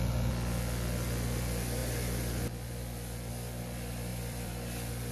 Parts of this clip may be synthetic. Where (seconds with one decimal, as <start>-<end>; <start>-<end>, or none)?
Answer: 4.1-5.1